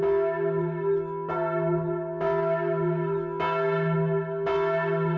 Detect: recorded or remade recorded